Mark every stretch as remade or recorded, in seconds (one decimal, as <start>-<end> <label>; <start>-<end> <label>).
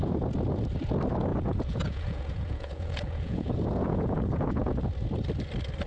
0.0-1.3 recorded; 1.3-4.8 remade; 4.8-5.9 recorded